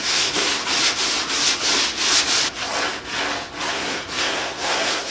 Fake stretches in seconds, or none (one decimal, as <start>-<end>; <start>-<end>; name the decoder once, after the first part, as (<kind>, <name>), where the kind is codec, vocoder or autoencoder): 0.0-0.6 (codec, SNAC); 3.7-5.1